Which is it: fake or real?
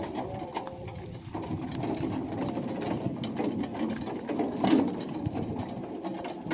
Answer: real